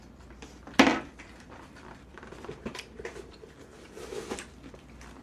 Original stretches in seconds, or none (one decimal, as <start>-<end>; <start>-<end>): 0.0-0.9; 4.0-5.2